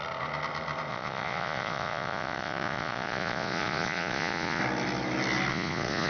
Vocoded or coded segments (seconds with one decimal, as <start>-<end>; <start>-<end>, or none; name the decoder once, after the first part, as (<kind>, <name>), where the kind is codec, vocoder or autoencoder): 0.9-4.6 (vocoder, Vocos); 5.5-6.1